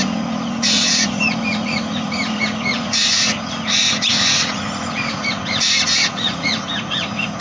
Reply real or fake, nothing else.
fake